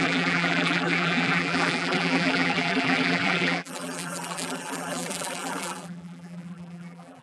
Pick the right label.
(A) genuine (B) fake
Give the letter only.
B